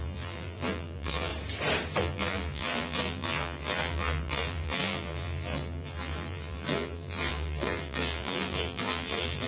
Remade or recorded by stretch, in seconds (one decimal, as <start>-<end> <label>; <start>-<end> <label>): 0.0-1.3 remade; 1.3-2.0 recorded; 2.0-9.5 remade